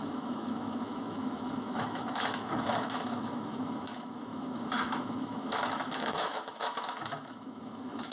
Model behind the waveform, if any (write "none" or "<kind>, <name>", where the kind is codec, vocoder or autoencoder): autoencoder, DAC-VAE